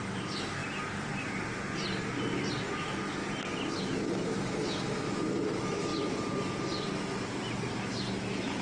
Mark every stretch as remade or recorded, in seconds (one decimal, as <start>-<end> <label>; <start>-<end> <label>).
0.0-0.6 remade; 0.6-2.5 recorded; 2.5-3.2 remade; 3.2-3.8 recorded; 3.8-5.9 remade; 5.9-8.2 recorded; 8.2-8.6 remade